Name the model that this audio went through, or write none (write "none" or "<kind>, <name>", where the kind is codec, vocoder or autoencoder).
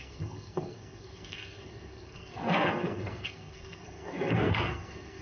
codec, SNAC